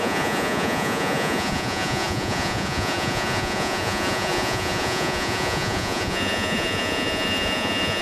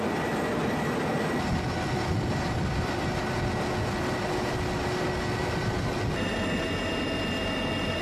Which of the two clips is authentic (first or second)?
second